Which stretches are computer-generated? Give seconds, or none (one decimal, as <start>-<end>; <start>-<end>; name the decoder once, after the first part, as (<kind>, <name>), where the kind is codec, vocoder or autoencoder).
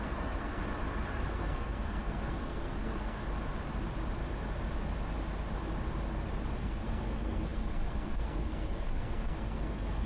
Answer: 0.0-0.6 (codec, SNAC); 1.3-3.2; 6.6-10.1